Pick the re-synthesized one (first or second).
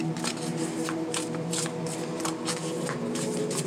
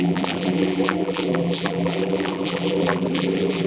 second